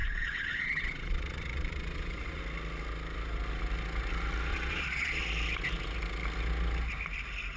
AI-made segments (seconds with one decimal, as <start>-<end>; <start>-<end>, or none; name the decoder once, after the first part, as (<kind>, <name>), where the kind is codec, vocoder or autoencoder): 0.0-2.4 (vocoder, Vocos); 4.5-5.2